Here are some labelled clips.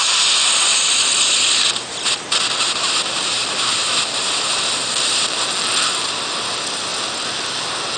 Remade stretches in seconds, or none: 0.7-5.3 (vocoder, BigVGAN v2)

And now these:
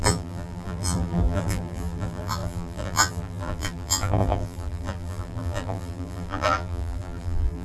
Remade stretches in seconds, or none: 0.0-7.6 (vocoder, BigVGAN v2)

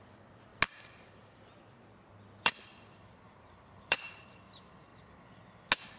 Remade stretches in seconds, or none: 0.0-0.5 (vocoder, BigVGAN v2); 1.1-4.9

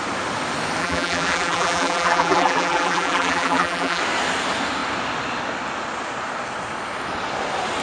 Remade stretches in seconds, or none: 0.8-4.0 (vocoder, BigVGAN v2)

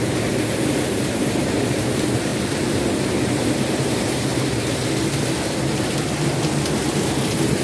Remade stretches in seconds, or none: 0.0-4.3 (vocoder, BigVGAN v2); 7.0-7.6